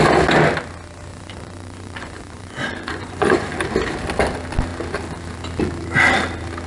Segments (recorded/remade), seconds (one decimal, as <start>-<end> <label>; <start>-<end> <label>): 0.0-1.1 recorded; 1.1-3.5 remade; 3.5-6.7 recorded